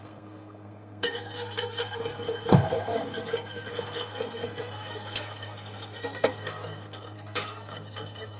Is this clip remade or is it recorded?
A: remade